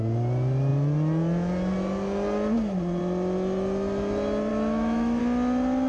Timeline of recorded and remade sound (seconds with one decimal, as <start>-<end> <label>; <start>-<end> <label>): 0.0-4.5 recorded; 4.5-5.2 remade; 5.2-5.9 recorded